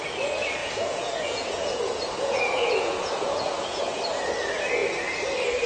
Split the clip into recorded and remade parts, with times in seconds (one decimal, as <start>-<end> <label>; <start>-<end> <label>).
0.0-0.6 recorded; 0.6-4.0 remade; 4.0-5.7 recorded